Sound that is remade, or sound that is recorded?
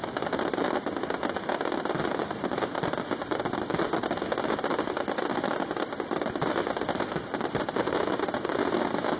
recorded